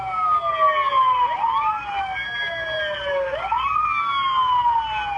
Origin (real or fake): real